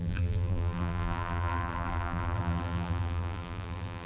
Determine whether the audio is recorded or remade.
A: remade